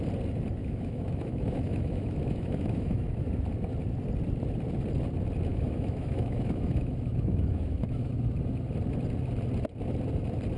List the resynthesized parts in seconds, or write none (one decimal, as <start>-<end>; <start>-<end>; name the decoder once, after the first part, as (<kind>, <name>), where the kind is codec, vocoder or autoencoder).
0.6-3.3 (autoencoder, DAC-VAE); 5.5-8.1